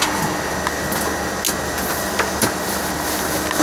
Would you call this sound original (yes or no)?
yes